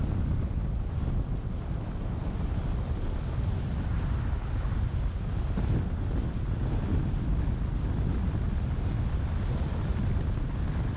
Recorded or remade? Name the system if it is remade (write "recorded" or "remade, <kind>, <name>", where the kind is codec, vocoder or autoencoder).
recorded